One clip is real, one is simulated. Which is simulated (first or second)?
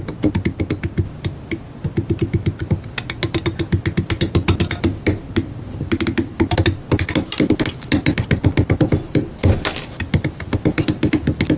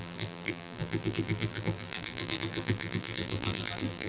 second